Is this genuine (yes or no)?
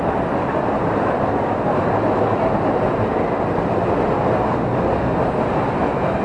yes